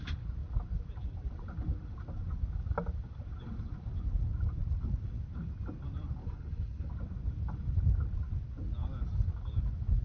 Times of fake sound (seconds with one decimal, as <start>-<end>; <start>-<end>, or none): 6.2-6.9